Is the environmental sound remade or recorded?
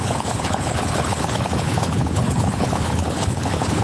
remade